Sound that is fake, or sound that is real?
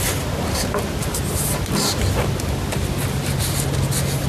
real